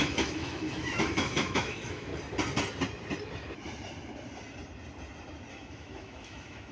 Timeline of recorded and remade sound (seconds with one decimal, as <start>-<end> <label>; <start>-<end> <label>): 0.0-2.1 remade; 2.1-5.5 recorded; 5.5-6.7 remade